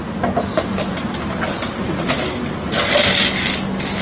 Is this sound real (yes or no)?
yes